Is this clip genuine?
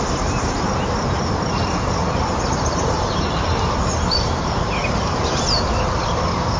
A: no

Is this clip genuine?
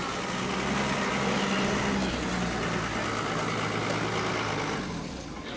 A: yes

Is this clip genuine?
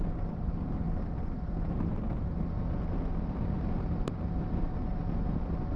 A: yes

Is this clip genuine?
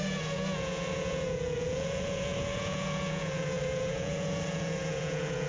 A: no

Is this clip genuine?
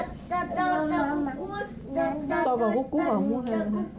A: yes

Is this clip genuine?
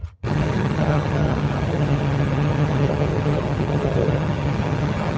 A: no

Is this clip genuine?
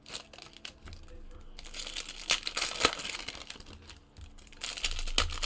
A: yes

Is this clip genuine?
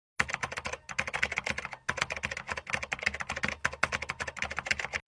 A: yes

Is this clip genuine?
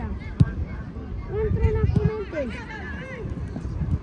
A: yes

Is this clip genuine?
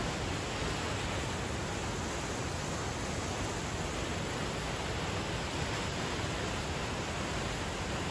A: yes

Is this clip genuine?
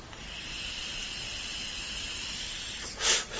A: yes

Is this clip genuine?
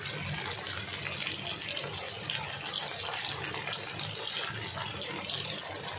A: yes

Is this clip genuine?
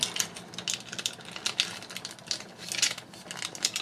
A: yes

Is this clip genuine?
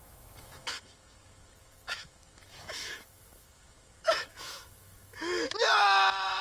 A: no